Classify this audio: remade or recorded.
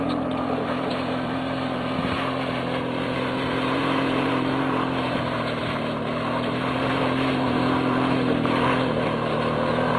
remade